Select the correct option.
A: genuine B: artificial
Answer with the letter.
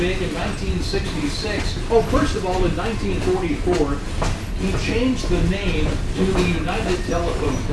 A